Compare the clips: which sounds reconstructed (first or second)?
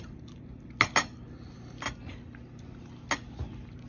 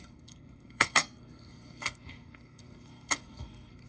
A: second